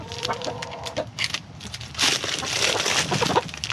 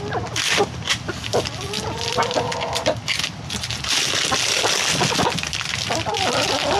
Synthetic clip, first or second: first